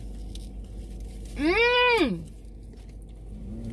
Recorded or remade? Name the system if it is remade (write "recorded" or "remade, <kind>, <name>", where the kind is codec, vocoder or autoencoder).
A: recorded